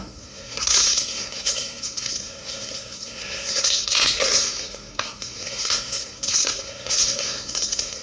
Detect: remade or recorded remade